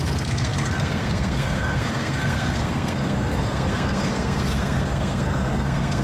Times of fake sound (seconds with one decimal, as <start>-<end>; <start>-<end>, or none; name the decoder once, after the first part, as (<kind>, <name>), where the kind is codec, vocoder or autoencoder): 0.0-6.0 (codec, SNAC)